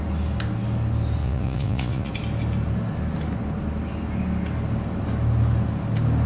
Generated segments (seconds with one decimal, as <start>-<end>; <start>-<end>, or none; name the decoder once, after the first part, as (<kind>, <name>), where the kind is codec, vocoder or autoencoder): 1.2-2.1 (vocoder, Vocos)